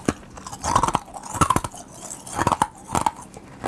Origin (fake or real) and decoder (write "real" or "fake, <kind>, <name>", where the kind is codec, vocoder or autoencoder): real